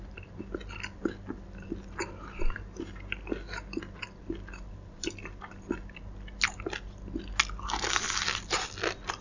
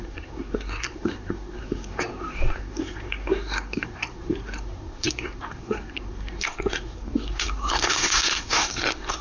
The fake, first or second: second